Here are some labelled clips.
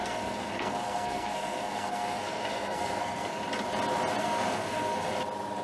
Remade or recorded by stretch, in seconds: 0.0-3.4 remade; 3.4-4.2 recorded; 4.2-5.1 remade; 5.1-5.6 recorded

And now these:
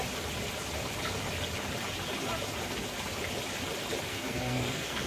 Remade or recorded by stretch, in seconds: 0.0-4.1 recorded; 4.1-5.1 remade

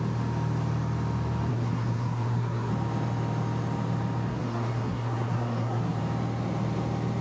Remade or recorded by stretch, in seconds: 0.0-1.5 recorded; 1.5-2.7 remade; 2.7-4.3 recorded; 4.3-6.0 remade; 6.0-7.2 recorded

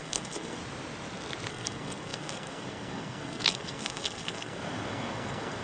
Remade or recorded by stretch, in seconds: 0.0-0.6 remade; 0.6-1.5 recorded; 1.5-5.6 remade

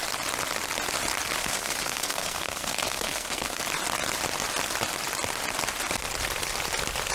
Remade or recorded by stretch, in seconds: 0.0-1.4 recorded; 1.4-3.6 remade; 3.6-7.1 recorded

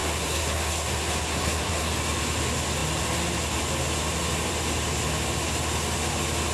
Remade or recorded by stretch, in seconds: 0.0-1.9 remade; 1.9-6.5 recorded

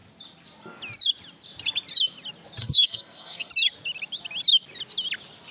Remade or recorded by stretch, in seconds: 0.0-2.6 recorded; 2.6-3.5 remade; 3.5-5.5 recorded

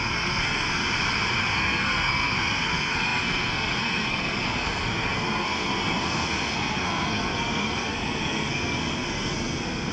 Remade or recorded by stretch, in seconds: 0.0-0.8 remade; 0.8-1.4 recorded; 1.4-9.9 remade